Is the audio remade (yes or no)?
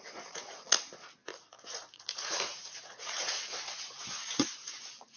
yes